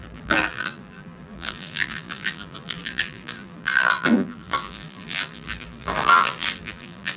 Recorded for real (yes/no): no